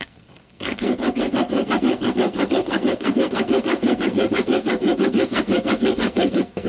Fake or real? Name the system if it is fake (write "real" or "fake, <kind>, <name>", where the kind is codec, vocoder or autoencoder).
fake, codec, SNAC